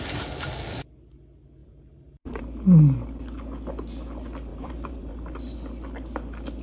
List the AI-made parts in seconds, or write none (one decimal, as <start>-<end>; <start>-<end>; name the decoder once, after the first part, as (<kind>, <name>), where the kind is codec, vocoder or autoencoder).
1.6-2.4 (vocoder, BigVGAN v2); 4.5-5.1